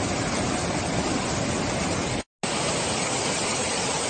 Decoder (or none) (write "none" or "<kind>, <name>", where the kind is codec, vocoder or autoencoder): none